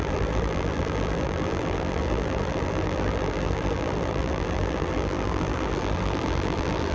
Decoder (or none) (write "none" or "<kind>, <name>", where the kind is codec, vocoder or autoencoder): vocoder, BigVGAN v2